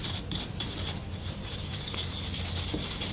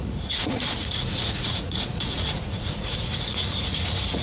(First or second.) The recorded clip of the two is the first